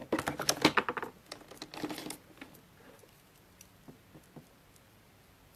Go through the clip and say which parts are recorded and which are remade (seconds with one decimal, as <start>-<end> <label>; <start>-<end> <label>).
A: 0.0-5.6 recorded